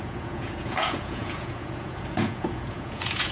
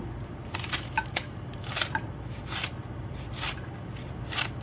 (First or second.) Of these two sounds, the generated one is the first